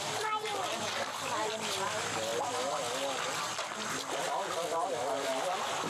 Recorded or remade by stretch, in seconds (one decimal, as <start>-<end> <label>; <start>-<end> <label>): 0.0-5.9 recorded